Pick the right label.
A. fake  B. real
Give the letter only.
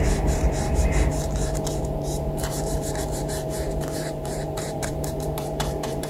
A